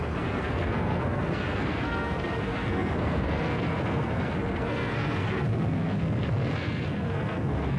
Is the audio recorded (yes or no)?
no